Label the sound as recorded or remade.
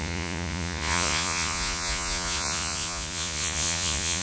remade